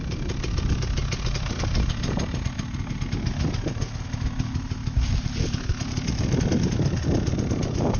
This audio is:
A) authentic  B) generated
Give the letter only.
A